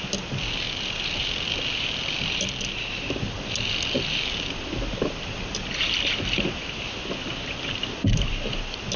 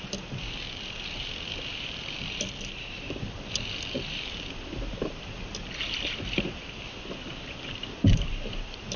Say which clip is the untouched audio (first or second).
first